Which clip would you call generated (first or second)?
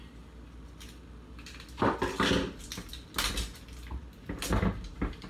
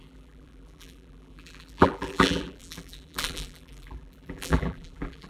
second